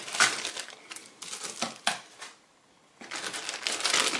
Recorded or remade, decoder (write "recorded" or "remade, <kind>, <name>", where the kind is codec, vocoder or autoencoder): recorded